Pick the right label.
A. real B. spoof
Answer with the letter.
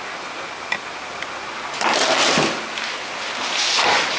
A